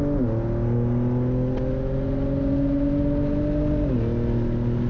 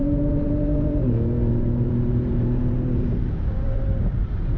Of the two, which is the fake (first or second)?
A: second